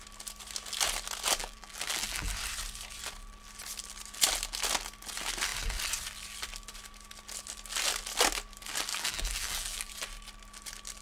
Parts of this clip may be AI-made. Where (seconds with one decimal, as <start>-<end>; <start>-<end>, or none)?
1.4-2.3; 8.9-9.9